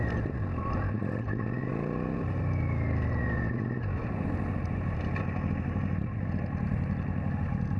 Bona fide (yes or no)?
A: yes